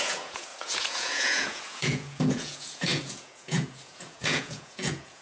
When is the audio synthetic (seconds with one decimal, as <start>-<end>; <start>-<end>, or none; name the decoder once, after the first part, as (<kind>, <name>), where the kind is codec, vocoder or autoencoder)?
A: 0.0-5.2 (vocoder, Vocos)